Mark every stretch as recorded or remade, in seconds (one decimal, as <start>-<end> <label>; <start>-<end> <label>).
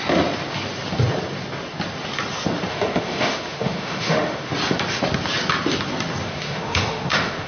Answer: 0.0-2.7 recorded; 2.7-4.5 remade; 4.5-6.2 recorded; 6.2-7.5 remade